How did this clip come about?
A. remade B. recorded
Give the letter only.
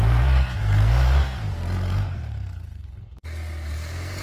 A